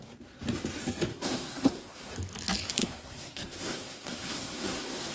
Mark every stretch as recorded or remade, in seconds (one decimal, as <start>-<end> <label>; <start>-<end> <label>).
0.0-1.1 recorded; 1.1-2.1 remade; 2.1-2.8 recorded; 2.8-5.1 remade